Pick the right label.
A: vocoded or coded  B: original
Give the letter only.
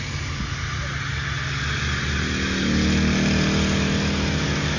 B